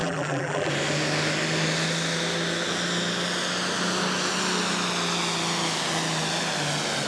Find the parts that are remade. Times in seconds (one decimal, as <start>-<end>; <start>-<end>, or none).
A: 0.0-0.7